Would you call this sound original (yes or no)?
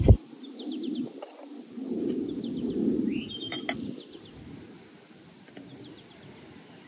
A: yes